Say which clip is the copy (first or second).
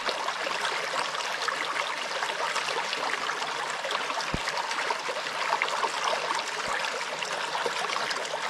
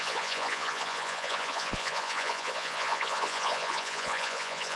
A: second